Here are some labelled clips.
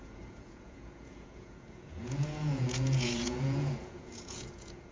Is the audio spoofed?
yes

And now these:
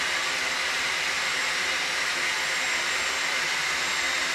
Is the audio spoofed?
yes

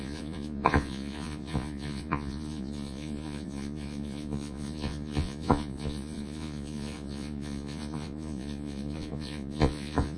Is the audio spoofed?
yes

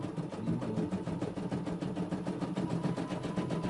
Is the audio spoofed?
no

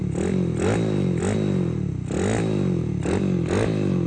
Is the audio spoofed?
no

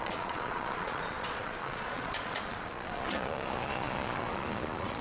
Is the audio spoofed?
yes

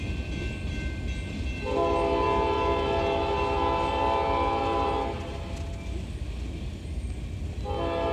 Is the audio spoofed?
no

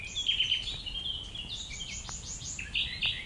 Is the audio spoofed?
no